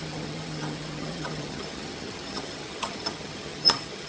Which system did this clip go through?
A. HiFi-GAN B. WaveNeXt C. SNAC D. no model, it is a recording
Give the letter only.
A